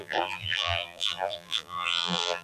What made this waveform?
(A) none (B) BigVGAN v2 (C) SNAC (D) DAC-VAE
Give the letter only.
B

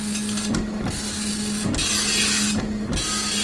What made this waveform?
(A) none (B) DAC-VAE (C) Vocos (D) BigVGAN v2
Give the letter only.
A